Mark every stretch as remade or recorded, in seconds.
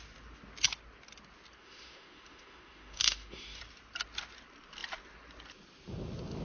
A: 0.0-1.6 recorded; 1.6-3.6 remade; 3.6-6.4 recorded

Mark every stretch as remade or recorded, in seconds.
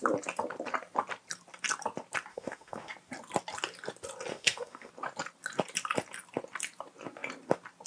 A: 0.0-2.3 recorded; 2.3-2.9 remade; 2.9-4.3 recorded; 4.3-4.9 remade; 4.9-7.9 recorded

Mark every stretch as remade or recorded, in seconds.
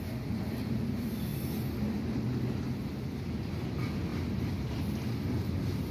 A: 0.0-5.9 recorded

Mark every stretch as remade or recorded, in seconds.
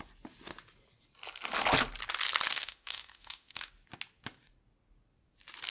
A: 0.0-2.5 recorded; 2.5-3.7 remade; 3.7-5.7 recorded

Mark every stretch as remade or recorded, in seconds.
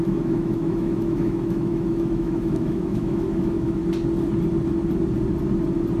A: 0.0-3.8 remade; 3.8-6.0 recorded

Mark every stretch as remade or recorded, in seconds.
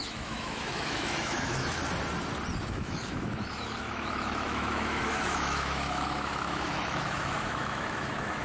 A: 0.0-1.8 remade; 1.8-2.6 recorded; 2.6-8.4 remade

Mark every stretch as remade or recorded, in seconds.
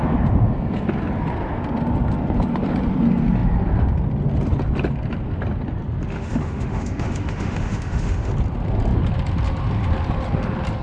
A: 0.0-6.1 recorded; 6.1-8.3 remade; 8.3-10.8 recorded